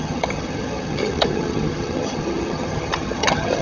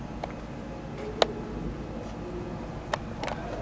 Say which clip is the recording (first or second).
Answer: second